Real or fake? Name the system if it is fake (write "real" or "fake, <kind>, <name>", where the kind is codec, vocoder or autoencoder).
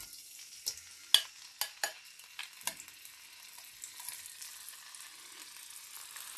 real